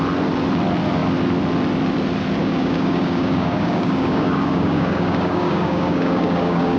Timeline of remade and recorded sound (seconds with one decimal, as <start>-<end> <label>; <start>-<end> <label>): 0.0-2.4 recorded; 2.4-6.8 remade